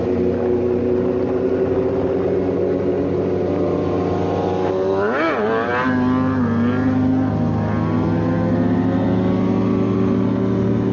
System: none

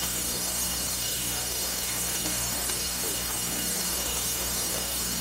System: codec, DAC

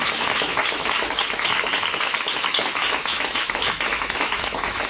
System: autoencoder, DAC-VAE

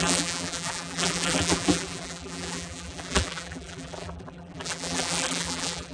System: vocoder, BigVGAN v2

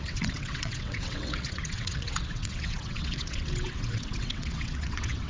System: vocoder, WaveNeXt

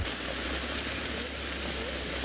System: none